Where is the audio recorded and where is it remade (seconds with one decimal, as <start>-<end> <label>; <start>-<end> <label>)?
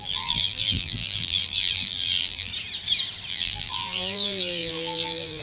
0.0-2.5 remade; 2.5-3.3 recorded; 3.3-5.4 remade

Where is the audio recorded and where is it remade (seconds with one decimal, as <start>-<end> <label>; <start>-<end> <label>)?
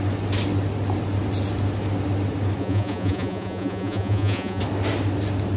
0.0-2.6 recorded; 2.6-4.6 remade; 4.6-5.6 recorded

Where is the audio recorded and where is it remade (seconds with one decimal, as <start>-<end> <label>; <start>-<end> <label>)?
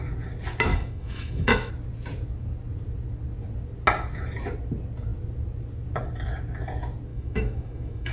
0.0-0.7 recorded; 0.7-1.7 remade; 1.7-7.1 recorded; 7.1-8.1 remade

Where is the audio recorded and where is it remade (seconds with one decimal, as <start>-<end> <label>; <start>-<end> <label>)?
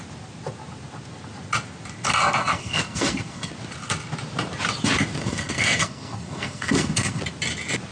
0.0-2.4 recorded; 2.4-3.5 remade; 3.5-5.2 recorded; 5.2-7.2 remade; 7.2-7.9 recorded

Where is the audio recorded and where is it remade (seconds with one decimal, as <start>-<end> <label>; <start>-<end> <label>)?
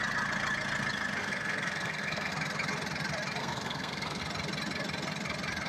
0.0-1.2 recorded; 1.2-2.3 remade; 2.3-3.4 recorded; 3.4-4.2 remade; 4.2-5.7 recorded